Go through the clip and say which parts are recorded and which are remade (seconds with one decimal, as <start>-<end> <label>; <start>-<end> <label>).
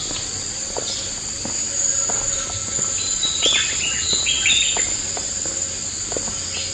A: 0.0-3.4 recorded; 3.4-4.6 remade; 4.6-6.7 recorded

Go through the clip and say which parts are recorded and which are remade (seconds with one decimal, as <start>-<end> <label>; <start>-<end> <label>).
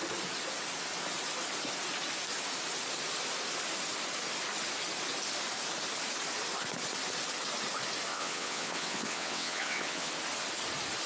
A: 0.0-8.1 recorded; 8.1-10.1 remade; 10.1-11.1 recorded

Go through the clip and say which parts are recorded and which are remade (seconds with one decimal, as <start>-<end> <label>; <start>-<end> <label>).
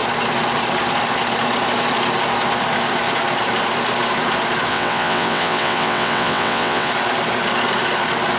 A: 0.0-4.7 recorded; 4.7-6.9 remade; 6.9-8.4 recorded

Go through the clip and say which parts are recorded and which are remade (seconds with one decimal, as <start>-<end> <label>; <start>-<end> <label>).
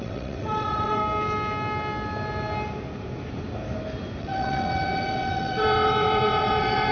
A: 0.0-1.0 remade; 1.0-4.2 recorded; 4.2-6.9 remade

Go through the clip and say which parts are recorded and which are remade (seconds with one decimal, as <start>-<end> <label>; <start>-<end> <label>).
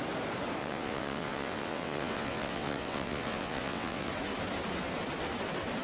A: 0.0-0.6 recorded; 0.6-4.1 remade; 4.1-5.8 recorded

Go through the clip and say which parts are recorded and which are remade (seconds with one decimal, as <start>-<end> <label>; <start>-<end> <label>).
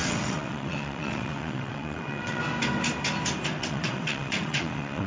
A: 0.0-2.4 remade; 2.4-3.6 recorded; 3.6-5.1 remade